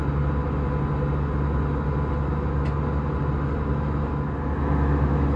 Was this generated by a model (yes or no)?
no